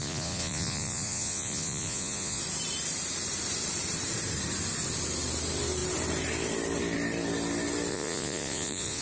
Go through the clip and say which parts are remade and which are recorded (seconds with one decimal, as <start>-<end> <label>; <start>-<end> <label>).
0.0-2.4 remade; 2.4-7.9 recorded; 7.9-9.0 remade